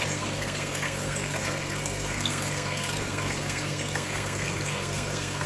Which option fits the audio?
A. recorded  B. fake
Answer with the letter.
B